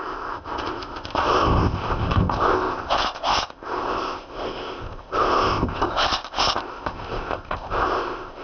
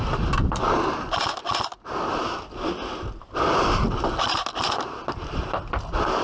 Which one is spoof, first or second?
first